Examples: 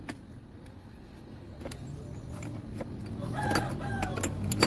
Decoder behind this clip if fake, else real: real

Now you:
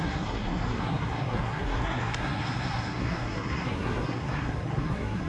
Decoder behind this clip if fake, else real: fake, codec, SNAC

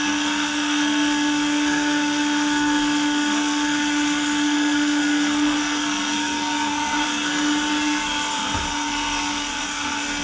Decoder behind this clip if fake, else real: fake, codec, SNAC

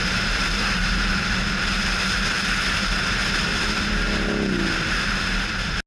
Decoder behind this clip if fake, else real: real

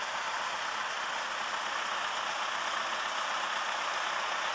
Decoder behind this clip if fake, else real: real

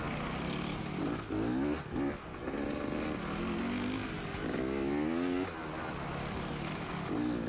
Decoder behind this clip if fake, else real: real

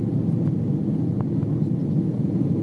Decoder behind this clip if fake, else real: real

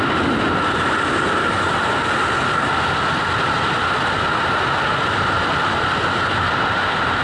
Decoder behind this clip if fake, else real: real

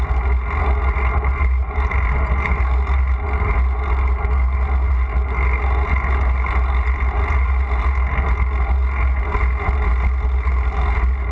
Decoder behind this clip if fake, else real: real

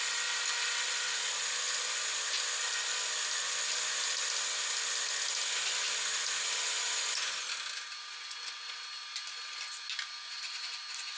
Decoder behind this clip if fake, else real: real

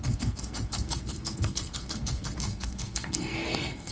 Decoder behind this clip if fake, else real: fake, codec, SNAC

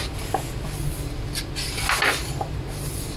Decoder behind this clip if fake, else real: real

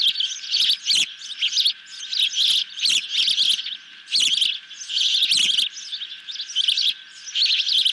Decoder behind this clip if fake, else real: real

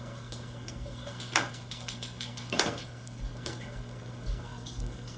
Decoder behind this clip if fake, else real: fake, codec, SNAC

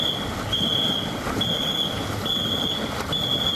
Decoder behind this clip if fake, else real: real